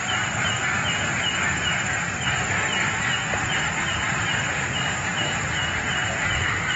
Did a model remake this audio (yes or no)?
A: no